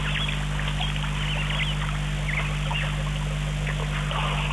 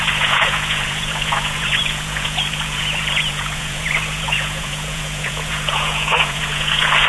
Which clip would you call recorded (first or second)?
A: first